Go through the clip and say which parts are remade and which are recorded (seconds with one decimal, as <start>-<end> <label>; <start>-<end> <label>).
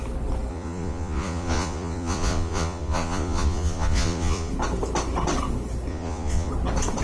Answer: 0.0-0.5 recorded; 0.5-4.5 remade; 4.5-5.9 recorded; 5.9-6.5 remade; 6.5-7.0 recorded